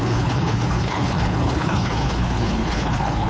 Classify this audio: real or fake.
fake